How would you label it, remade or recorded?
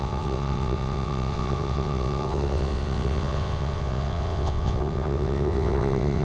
remade